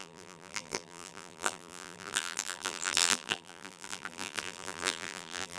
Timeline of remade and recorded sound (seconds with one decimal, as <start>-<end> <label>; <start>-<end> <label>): 0.0-5.6 remade